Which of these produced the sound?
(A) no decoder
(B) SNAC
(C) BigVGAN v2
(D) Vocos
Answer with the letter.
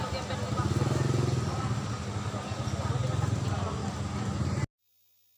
A